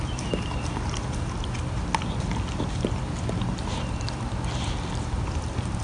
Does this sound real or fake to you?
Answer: fake